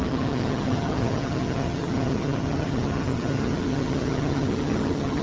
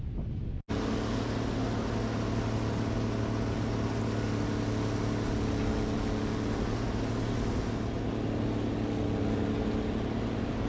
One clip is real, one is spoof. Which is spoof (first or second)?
first